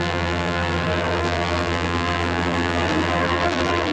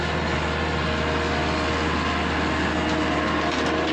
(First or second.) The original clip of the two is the second